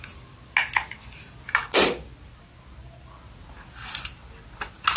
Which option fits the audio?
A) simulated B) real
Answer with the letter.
B